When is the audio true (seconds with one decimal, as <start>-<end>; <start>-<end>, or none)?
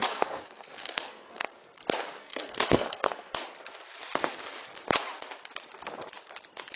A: 1.5-2.2; 3.3-6.8